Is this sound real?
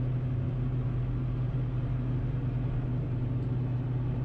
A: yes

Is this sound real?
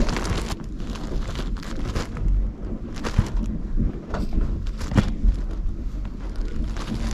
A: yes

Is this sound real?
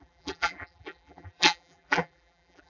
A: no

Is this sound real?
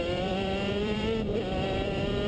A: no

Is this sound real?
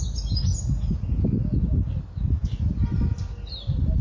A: yes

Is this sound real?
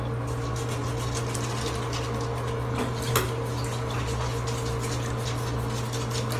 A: yes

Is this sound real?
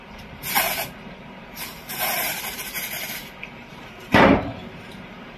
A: no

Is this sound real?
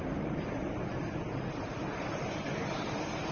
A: no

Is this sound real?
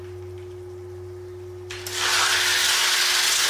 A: yes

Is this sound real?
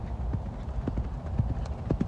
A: no